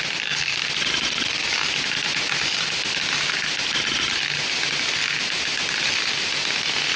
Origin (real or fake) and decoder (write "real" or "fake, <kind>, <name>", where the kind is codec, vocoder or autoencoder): real